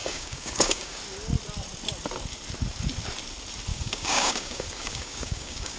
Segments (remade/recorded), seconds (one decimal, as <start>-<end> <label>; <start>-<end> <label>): 0.0-1.0 remade; 1.0-3.7 recorded; 3.7-5.8 remade